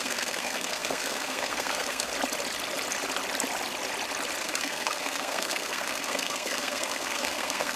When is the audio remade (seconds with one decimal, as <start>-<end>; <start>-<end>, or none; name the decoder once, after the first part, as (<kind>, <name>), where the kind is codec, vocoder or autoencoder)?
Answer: 0.0-2.1 (codec, SNAC); 4.4-7.8